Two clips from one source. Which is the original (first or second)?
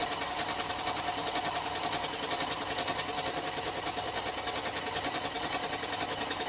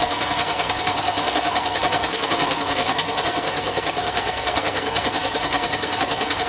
first